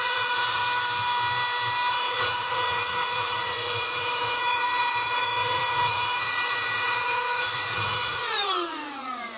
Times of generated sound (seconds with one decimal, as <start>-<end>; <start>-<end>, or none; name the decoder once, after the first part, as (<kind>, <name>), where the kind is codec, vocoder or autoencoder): 0.0-0.6 (vocoder, Vocos); 1.9-9.4